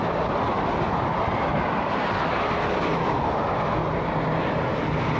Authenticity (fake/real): real